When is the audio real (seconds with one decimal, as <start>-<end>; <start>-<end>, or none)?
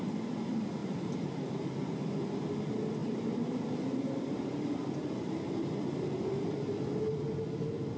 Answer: 0.0-0.8; 1.7-3.0; 5.3-8.0